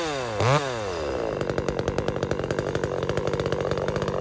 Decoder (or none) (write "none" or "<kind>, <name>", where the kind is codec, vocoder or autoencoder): none